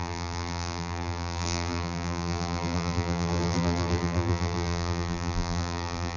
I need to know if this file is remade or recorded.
remade